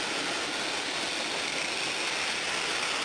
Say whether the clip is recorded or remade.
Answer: recorded